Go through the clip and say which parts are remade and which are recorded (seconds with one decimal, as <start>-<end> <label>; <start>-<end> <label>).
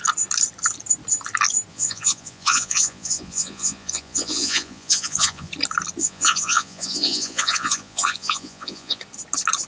0.0-1.7 recorded; 1.7-5.5 remade; 5.5-6.0 recorded; 6.0-9.0 remade; 9.0-9.7 recorded